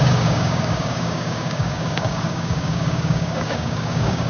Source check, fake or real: fake